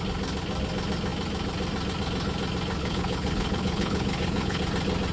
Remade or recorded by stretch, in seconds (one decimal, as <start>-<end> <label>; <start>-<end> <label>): 0.0-2.8 recorded; 2.8-4.6 remade; 4.6-5.1 recorded